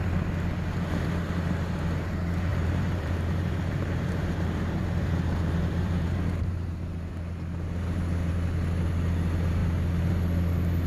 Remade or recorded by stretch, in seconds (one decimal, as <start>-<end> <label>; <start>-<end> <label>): 0.0-2.5 recorded; 2.5-7.1 remade; 7.1-10.9 recorded